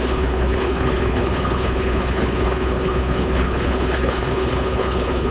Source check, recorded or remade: remade